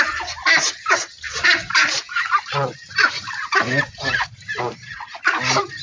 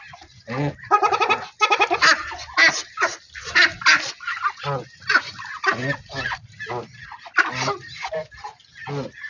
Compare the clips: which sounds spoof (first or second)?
first